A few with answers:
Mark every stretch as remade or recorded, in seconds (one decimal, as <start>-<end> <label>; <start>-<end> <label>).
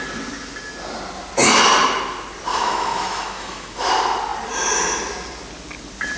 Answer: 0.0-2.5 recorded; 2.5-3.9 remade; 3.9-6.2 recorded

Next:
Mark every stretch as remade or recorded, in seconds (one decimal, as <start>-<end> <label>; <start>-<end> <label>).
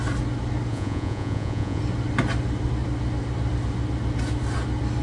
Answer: 0.0-0.7 recorded; 0.7-1.8 remade; 1.8-5.0 recorded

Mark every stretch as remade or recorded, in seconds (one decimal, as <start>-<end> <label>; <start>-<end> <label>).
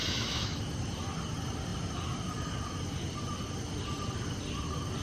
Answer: 0.0-0.6 remade; 0.6-5.0 recorded